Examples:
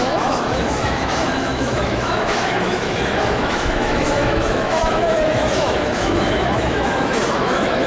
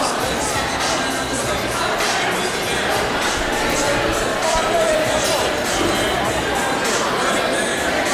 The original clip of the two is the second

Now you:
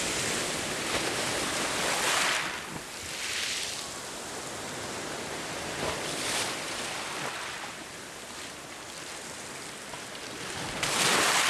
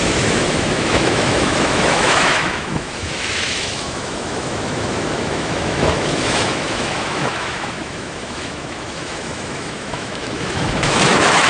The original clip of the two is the first